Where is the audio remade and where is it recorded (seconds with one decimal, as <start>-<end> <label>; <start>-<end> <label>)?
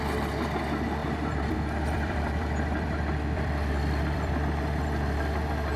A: 0.0-1.0 recorded; 1.0-4.3 remade; 4.3-5.8 recorded